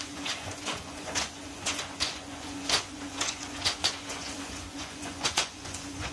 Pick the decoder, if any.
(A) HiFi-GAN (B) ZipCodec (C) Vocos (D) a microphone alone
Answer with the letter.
C